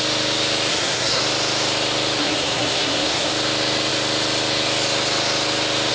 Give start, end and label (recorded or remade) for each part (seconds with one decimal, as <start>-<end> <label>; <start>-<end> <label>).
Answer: 0.0-0.7 recorded; 0.7-1.2 remade; 1.2-2.2 recorded; 2.2-3.3 remade; 3.3-5.9 recorded